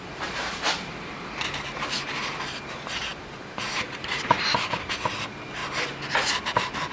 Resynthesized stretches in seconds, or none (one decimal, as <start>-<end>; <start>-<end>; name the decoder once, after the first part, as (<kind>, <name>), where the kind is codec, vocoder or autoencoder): 0.0-5.6 (vocoder, BigVGAN v2); 6.3-6.9